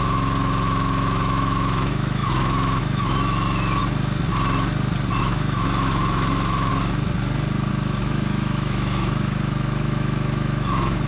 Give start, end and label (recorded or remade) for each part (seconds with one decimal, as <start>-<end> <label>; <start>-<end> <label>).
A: 0.0-3.8 remade; 3.8-5.2 recorded; 5.2-6.7 remade; 6.7-7.7 recorded; 7.7-11.1 remade